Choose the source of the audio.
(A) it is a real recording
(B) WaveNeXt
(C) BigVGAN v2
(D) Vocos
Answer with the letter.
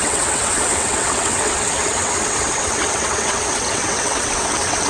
B